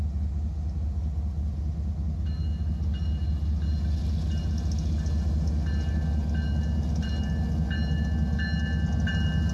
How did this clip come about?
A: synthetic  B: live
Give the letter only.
B